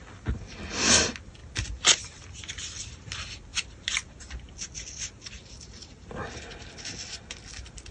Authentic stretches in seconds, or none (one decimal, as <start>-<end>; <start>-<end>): 0.0-7.9